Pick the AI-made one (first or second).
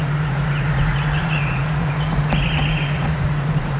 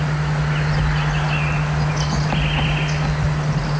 first